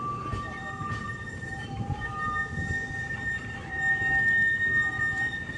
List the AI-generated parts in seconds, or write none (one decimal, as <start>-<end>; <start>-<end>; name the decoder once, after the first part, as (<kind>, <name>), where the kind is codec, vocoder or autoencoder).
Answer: 0.0-0.6 (vocoder, BigVGAN v2); 1.3-2.4; 2.9-4.1; 5.0-5.6